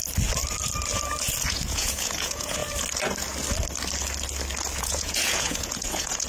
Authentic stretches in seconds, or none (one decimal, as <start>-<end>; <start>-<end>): 0.0-1.4; 2.6-4.8